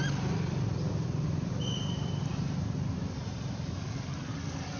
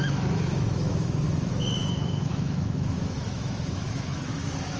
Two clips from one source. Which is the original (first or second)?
first